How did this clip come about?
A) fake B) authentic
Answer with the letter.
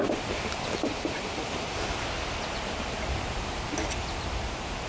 B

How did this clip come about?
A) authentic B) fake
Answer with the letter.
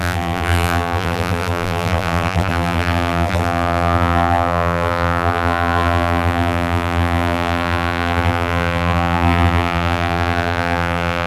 B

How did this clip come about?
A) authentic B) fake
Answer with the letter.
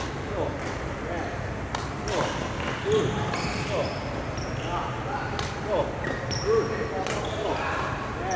B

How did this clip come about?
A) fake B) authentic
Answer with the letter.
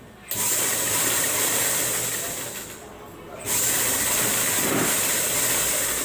B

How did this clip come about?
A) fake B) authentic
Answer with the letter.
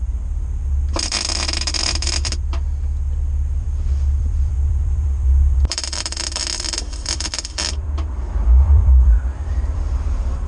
A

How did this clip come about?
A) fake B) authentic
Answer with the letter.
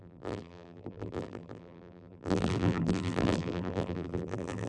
A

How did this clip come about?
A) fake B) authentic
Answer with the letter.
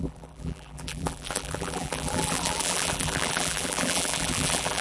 A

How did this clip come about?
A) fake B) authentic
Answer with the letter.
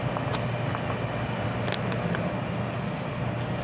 B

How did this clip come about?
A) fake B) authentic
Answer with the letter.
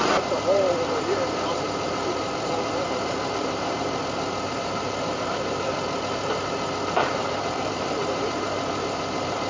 A